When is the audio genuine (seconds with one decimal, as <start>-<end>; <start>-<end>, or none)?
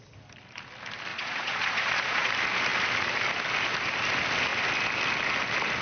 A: 0.0-1.1; 2.3-5.8